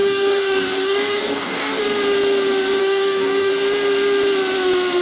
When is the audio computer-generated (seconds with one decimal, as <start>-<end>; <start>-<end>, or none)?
0.0-1.8; 2.8-3.5